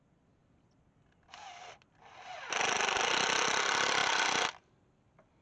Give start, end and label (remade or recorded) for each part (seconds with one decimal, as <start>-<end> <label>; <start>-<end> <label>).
0.0-5.4 recorded